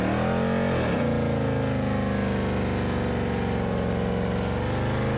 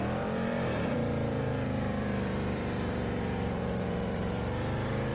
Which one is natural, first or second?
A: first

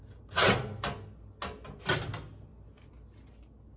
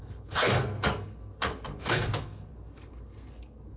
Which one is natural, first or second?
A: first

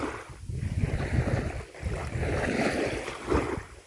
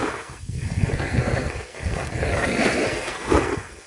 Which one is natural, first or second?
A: first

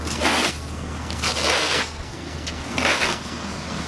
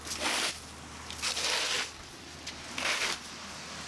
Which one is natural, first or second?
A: second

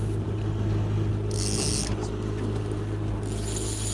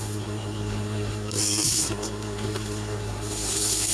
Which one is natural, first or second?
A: first